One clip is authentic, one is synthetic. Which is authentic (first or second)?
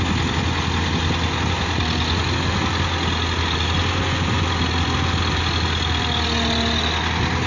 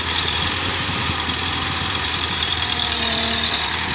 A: first